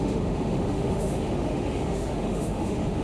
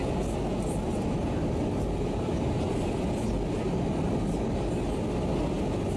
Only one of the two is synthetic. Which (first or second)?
first